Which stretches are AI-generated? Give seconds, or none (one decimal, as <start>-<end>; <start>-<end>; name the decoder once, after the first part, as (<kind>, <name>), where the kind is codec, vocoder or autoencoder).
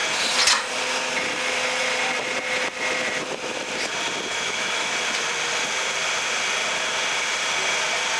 4.3-4.9 (autoencoder, DAC-VAE)